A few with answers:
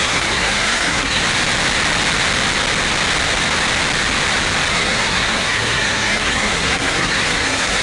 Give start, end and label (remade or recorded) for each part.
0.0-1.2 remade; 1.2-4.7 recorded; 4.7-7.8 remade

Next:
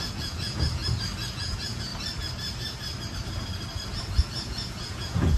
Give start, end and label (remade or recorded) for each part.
0.0-0.8 remade; 0.8-1.3 recorded; 1.3-1.9 remade; 1.9-4.2 recorded; 4.2-5.4 remade